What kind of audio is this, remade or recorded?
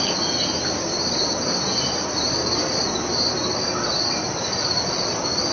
recorded